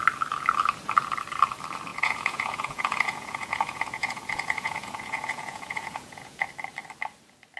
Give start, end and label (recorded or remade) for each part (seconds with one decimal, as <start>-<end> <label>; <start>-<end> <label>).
0.0-1.9 recorded; 1.9-6.5 remade; 6.5-7.6 recorded